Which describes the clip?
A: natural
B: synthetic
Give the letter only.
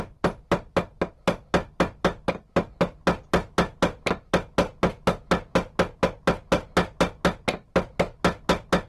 A